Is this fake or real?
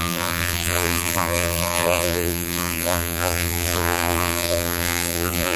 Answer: fake